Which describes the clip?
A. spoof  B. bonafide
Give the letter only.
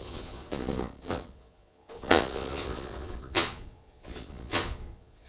A